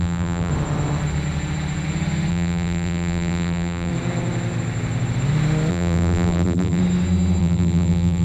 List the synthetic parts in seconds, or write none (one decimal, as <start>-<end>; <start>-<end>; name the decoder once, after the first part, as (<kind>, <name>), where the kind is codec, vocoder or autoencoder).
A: 0.0-0.5 (vocoder, BigVGAN v2); 2.3-3.9; 5.7-6.8; 7.4-8.2